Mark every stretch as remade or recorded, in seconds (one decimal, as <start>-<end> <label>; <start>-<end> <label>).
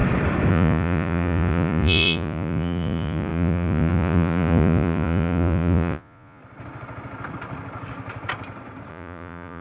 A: 0.0-0.5 recorded; 0.5-6.4 remade; 6.4-8.9 recorded; 8.9-9.6 remade